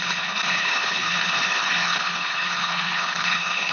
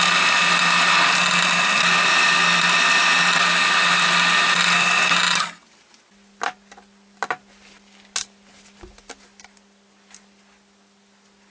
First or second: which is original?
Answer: second